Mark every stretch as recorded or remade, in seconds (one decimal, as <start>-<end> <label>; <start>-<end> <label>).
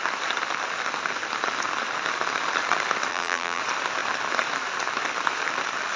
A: 0.0-3.1 recorded; 3.1-3.6 remade; 3.6-6.0 recorded